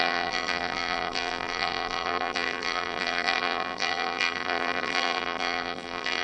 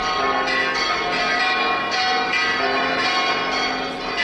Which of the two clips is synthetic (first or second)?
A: first